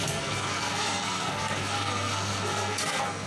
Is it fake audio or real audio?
fake